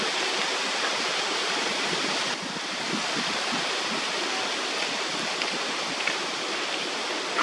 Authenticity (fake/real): real